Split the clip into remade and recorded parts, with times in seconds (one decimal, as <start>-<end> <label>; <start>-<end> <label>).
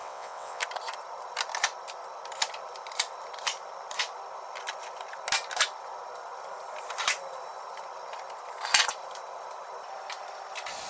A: 0.0-0.6 remade; 0.6-10.9 recorded